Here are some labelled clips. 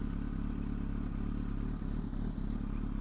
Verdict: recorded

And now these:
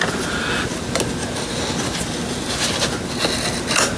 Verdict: recorded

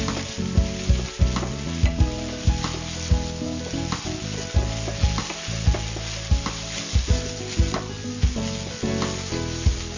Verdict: recorded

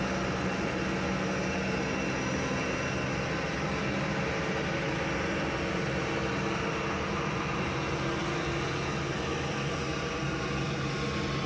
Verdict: recorded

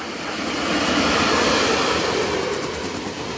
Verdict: recorded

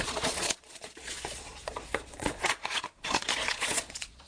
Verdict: remade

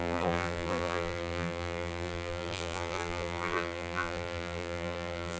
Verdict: remade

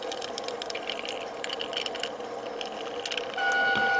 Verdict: recorded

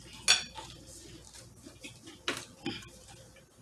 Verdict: recorded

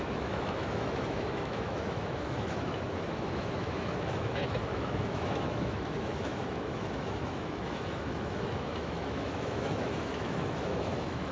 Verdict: remade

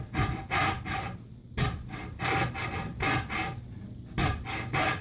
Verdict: recorded